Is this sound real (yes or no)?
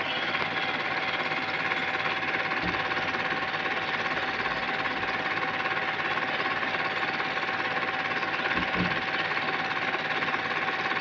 yes